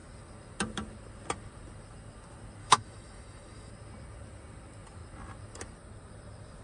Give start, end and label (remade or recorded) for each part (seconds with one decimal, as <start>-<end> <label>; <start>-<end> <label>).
0.0-2.6 recorded; 2.6-3.7 remade; 3.7-6.6 recorded